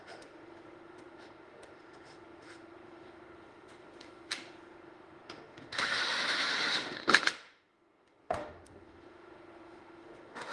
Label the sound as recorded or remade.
remade